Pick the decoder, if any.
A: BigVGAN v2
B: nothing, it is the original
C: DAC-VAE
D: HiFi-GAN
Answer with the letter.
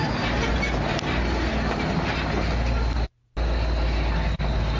B